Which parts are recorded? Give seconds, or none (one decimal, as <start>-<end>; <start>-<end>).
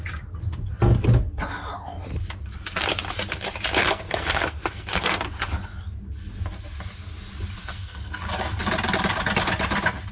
0.0-3.8; 5.2-7.6; 8.1-10.1